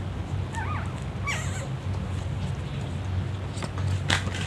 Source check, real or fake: real